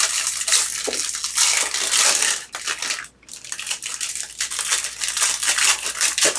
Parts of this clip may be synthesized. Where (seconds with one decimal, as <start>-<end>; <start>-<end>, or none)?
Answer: none